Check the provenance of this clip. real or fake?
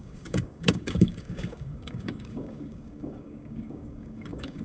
fake